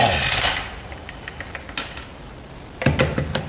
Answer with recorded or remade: recorded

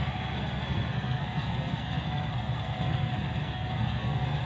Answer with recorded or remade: remade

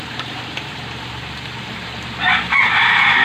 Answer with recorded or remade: recorded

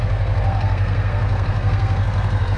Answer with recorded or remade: remade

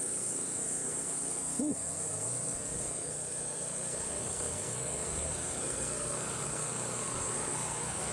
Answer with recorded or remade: remade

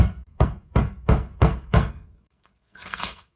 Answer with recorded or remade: remade